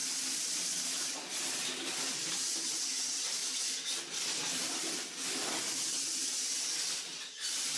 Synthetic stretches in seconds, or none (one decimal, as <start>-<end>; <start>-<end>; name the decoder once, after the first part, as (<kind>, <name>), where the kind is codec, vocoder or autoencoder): none